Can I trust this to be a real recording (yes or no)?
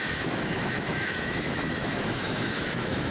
no